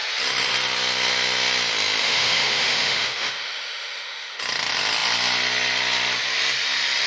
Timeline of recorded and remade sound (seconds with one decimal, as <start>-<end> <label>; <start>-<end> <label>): 0.0-2.0 recorded; 2.0-4.4 remade; 4.4-7.1 recorded